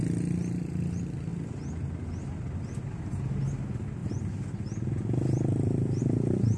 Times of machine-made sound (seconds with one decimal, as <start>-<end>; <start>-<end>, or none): none